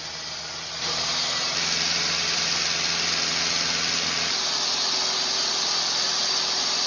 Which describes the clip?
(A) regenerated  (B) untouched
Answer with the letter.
B